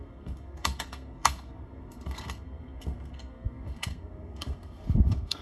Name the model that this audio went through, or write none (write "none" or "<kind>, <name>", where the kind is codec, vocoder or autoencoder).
codec, SNAC